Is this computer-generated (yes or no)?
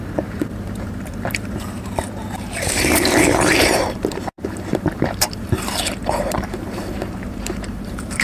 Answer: yes